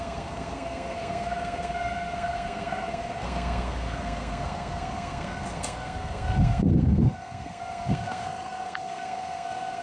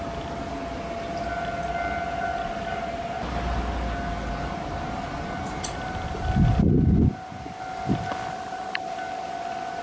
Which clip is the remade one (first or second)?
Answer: first